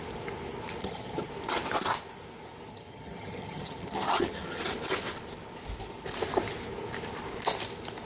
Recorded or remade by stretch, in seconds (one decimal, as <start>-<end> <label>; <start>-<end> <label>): 0.0-0.8 recorded; 0.8-1.3 remade; 1.3-2.7 recorded; 2.7-4.6 remade; 4.6-8.0 recorded